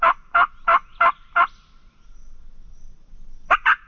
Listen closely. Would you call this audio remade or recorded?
recorded